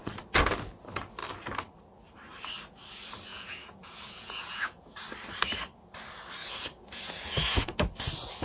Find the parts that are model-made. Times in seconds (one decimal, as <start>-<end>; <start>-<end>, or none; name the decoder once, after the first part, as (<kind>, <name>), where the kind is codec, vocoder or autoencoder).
3.3-4.8 (vocoder, Vocos); 6.4-7.8